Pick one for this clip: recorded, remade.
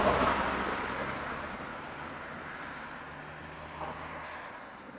recorded